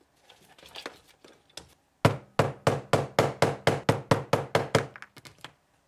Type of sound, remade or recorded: recorded